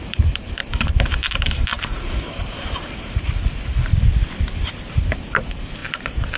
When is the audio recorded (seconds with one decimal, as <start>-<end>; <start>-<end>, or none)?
3.9-4.6